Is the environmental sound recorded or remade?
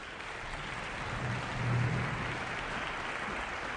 recorded